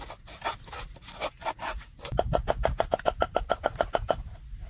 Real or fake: real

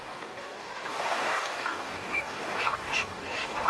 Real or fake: fake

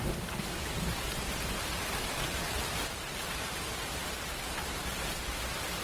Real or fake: fake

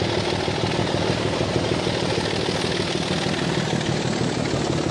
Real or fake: real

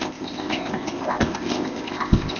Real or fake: fake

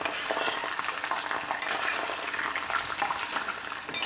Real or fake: real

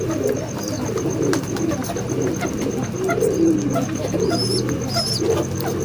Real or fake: real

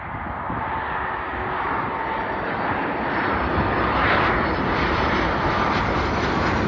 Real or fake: real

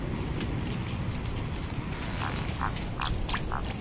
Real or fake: real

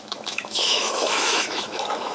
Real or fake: fake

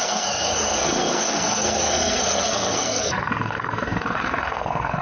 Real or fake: fake